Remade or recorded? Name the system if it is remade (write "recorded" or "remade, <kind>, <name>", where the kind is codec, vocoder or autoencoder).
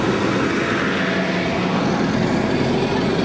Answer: recorded